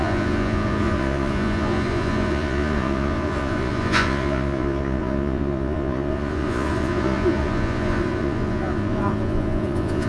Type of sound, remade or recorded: remade